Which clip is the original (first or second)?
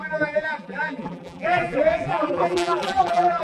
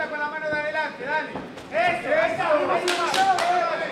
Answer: second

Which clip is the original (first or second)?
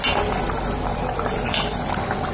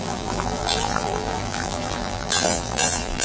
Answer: first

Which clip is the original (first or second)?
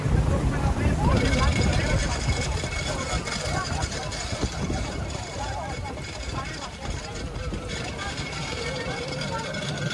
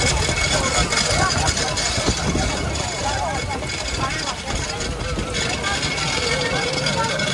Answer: second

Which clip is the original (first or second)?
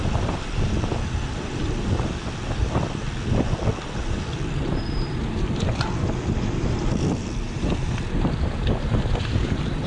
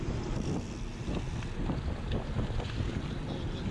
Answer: second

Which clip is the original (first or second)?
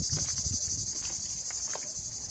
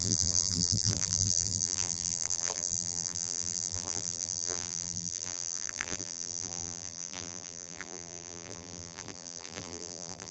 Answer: first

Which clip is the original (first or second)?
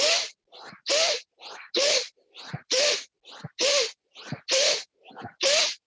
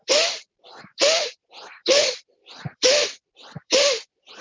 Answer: first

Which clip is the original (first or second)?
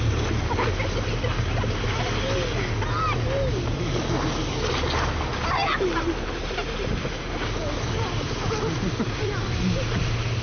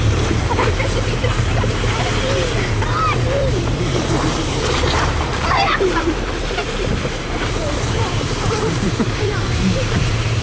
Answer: first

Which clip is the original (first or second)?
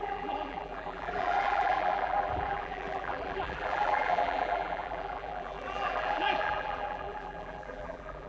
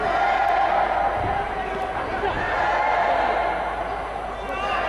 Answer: second